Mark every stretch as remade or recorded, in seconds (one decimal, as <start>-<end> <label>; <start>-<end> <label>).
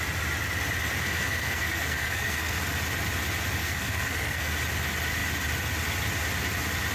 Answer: 0.0-0.9 recorded; 0.9-2.6 remade; 2.6-3.6 recorded; 3.6-4.5 remade; 4.5-6.9 recorded